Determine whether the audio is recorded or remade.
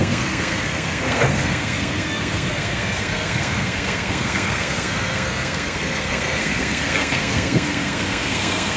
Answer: remade